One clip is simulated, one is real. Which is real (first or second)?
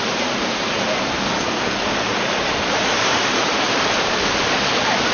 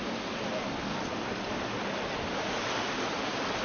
second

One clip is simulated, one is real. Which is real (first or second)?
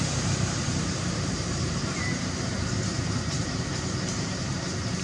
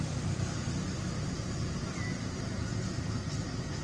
second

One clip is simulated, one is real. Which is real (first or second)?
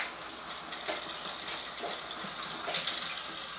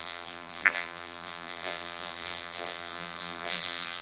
first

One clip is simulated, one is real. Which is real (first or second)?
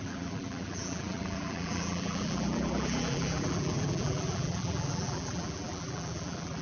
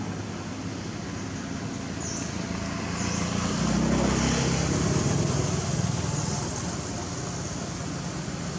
second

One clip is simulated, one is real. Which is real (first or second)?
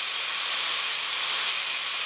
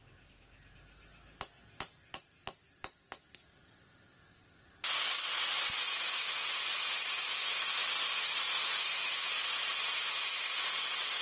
second